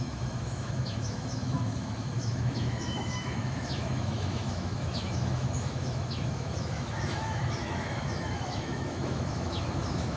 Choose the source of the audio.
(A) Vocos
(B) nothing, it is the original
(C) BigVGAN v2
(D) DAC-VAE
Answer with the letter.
D